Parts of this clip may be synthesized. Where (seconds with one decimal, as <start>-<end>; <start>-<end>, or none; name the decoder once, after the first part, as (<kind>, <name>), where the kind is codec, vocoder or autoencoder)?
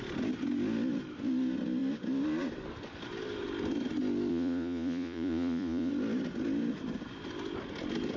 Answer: 4.3-5.9 (vocoder, Vocos)